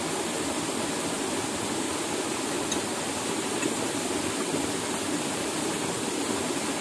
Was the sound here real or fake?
real